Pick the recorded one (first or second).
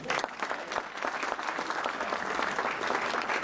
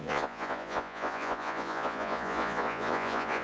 first